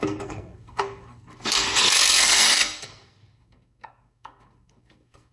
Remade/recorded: remade